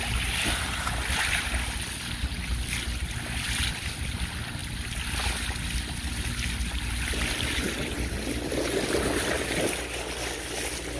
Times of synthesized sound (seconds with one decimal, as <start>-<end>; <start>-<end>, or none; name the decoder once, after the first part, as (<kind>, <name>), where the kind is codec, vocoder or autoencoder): none